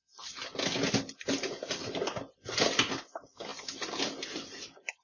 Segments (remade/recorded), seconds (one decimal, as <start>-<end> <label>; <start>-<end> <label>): 0.0-5.0 recorded